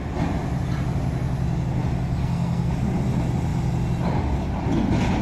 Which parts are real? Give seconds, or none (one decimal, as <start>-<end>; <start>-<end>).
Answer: 0.0-2.2; 2.7-5.2